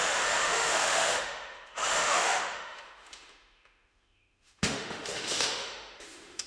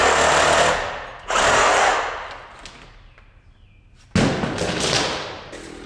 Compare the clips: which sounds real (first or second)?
second